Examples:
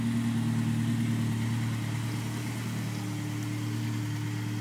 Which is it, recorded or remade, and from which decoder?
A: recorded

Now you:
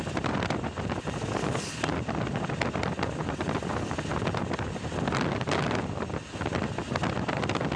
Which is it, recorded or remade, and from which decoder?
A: recorded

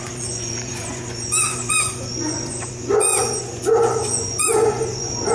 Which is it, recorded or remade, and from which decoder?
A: remade, vocoder, Vocos